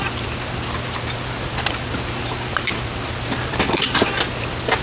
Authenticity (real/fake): real